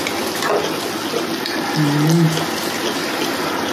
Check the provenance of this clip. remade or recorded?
recorded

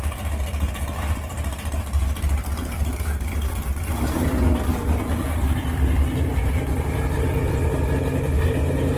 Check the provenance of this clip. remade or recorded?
recorded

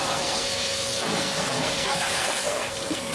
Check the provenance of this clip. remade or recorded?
remade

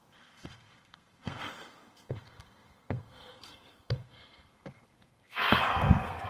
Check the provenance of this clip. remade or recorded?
remade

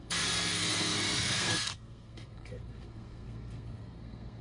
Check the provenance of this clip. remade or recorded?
remade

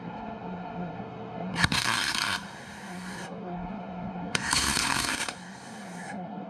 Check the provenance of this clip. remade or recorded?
remade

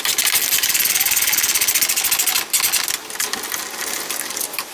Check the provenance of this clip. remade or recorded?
recorded